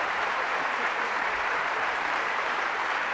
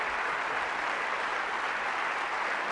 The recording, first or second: second